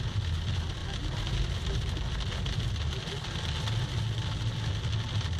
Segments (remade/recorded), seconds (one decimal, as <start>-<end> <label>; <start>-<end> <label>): 0.0-5.4 recorded